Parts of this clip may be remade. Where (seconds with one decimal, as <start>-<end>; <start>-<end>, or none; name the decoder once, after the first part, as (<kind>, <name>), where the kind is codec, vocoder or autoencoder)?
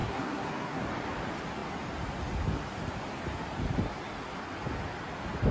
0.0-0.8 (codec, SNAC)